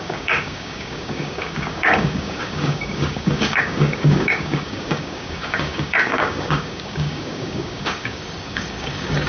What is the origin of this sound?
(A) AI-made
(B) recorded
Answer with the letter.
A